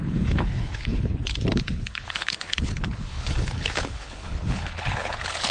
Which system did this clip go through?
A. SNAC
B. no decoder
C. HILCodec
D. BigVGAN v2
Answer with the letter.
C